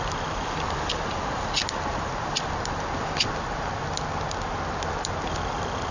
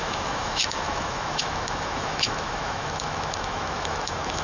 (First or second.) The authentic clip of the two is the first